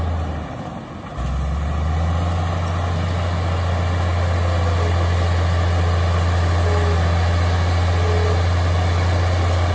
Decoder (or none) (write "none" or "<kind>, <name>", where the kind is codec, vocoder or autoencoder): none